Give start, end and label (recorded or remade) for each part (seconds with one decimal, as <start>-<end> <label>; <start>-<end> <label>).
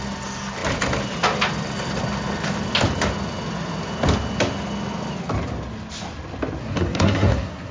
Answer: 0.0-6.6 recorded; 6.6-7.7 remade